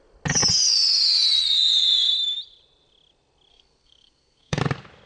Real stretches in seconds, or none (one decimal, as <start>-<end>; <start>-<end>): 0.0-3.5; 4.6-5.1